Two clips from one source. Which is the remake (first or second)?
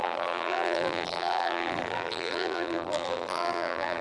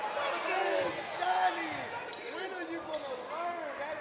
first